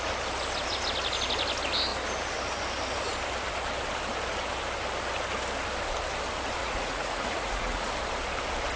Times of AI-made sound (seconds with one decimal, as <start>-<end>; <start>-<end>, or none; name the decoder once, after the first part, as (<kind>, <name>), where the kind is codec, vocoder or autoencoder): 6.6-7.9 (vocoder, Vocos)